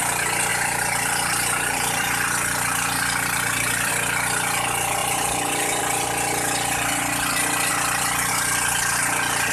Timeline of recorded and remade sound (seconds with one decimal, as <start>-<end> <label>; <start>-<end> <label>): 0.0-0.5 recorded; 0.5-3.9 remade; 3.9-5.0 recorded; 5.0-5.8 remade; 5.8-7.7 recorded; 7.7-8.3 remade; 8.3-9.5 recorded

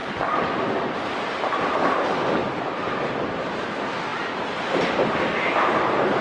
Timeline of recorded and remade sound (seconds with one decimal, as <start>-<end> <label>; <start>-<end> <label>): 0.0-2.4 recorded; 2.4-3.1 remade; 3.1-6.2 recorded